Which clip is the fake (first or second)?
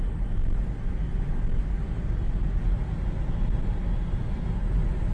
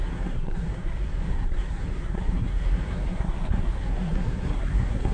second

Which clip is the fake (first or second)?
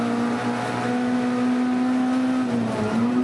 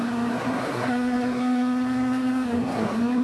second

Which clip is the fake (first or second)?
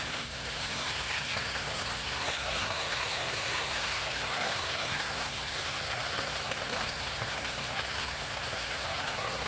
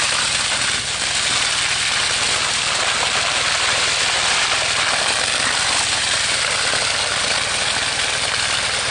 first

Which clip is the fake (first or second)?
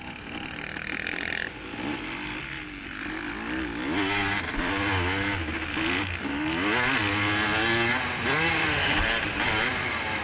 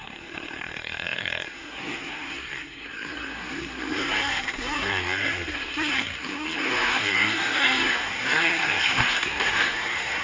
second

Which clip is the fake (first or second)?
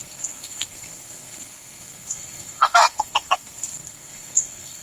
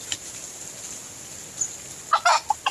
first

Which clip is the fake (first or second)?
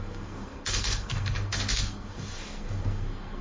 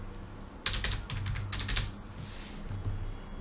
first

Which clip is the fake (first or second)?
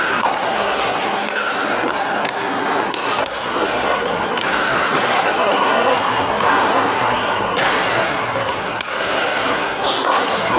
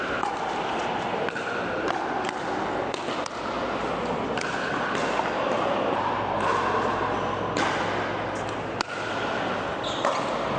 first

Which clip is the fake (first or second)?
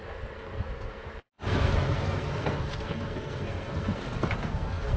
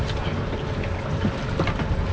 first